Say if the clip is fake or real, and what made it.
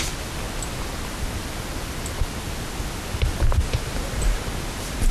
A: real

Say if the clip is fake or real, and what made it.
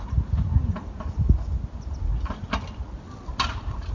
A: real